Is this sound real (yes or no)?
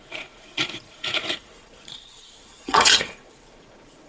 no